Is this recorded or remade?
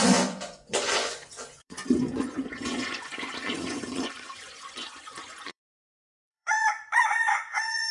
remade